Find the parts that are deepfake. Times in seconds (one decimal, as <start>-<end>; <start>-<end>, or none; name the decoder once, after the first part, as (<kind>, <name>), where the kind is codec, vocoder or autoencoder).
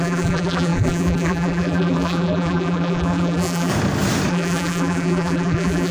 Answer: 0.0-3.7 (vocoder, BigVGAN v2); 4.3-5.9